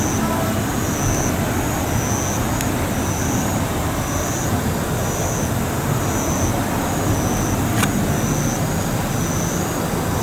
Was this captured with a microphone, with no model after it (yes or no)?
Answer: yes